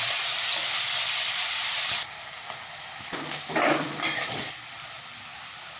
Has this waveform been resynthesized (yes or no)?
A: yes